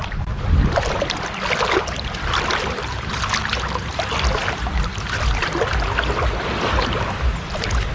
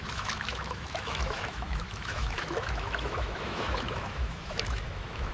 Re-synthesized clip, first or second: second